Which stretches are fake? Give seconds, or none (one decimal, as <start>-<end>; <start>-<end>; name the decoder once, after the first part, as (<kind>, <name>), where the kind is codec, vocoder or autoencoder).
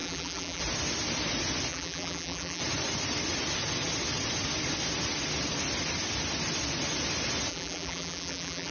0.0-0.6 (vocoder, BigVGAN v2); 1.7-2.6; 7.5-8.7